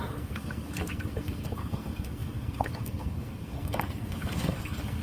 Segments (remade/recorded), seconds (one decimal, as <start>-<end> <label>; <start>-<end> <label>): 0.0-5.0 remade